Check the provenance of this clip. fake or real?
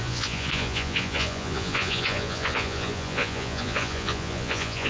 fake